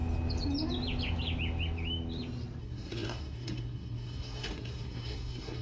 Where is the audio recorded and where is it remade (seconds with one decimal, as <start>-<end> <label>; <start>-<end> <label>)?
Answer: 0.0-2.6 recorded; 2.6-5.6 remade